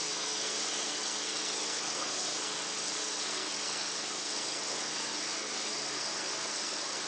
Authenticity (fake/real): fake